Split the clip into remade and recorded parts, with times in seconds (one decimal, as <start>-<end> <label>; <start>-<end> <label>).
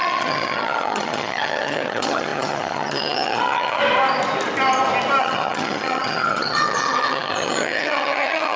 0.0-3.8 remade; 3.8-5.2 recorded; 5.2-8.6 remade